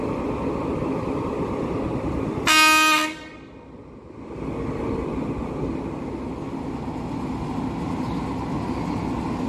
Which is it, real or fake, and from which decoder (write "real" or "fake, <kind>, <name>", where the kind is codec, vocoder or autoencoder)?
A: real